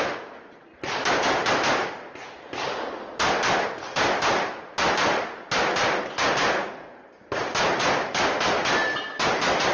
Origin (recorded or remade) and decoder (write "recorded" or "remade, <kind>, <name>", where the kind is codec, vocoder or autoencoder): recorded